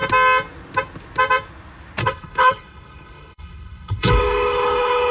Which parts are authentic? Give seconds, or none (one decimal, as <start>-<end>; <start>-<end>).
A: 0.0-2.0